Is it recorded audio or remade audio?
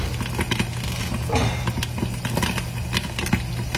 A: recorded